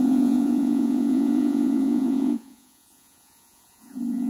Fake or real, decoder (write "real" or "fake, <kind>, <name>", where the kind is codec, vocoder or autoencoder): fake, vocoder, Vocos